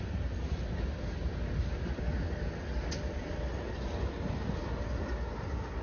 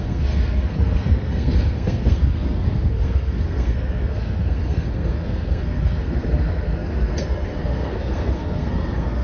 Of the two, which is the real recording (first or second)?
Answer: first